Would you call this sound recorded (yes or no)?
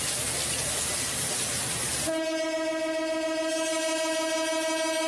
yes